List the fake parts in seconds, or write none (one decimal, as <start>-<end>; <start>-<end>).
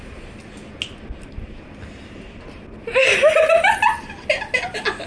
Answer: none